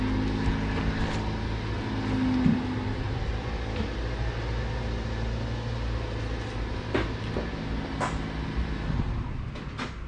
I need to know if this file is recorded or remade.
recorded